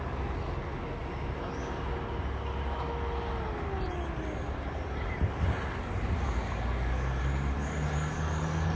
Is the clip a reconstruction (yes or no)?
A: no